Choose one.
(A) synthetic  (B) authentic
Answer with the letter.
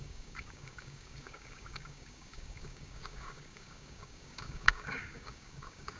A